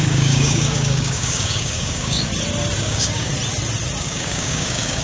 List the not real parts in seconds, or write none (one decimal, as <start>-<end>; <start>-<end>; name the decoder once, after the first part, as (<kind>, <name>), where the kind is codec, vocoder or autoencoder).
0.0-2.3 (codec, DAC); 2.8-3.3; 4.0-5.0